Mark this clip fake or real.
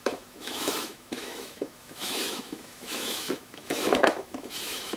fake